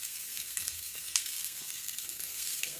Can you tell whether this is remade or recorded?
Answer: remade